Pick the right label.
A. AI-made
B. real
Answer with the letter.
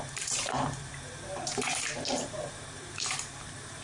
A